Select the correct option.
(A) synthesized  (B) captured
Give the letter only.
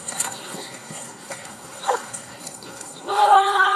A